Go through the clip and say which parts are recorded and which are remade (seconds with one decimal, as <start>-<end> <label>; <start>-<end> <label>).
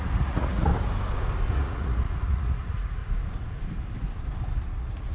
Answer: 0.0-0.7 remade; 0.7-1.5 recorded; 1.5-3.0 remade; 3.0-4.6 recorded; 4.6-5.1 remade